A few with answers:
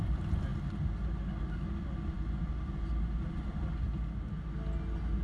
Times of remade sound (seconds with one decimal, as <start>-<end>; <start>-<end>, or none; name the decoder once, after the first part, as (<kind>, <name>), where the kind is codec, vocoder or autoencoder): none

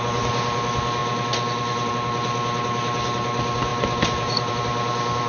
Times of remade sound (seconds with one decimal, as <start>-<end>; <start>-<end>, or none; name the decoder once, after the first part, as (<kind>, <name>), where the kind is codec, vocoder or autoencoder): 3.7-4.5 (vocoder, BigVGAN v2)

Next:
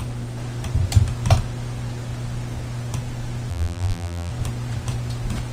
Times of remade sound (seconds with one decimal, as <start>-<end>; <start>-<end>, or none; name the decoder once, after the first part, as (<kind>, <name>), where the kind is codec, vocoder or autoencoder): 3.5-4.3 (vocoder, BigVGAN v2)

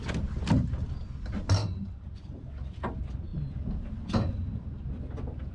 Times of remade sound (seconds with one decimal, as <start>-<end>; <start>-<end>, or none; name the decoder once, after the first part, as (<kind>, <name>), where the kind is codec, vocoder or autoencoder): 1.6-2.7 (vocoder, BigVGAN v2); 3.3-4.9

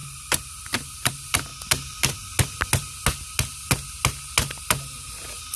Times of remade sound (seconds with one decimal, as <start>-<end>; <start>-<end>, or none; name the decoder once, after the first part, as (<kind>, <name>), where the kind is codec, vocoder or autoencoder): 0.0-1.1 (vocoder, BigVGAN v2)

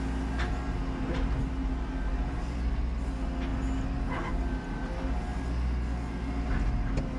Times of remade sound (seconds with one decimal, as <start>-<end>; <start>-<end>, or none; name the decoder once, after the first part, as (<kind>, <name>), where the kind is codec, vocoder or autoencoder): none

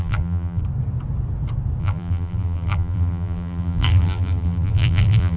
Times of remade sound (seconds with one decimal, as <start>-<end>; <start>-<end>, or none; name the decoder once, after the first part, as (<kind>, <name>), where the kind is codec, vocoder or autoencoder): 0.0-0.6 (vocoder, BigVGAN v2); 1.8-5.4